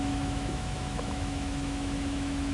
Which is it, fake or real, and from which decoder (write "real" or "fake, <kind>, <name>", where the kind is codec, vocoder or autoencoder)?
fake, autoencoder, DAC-VAE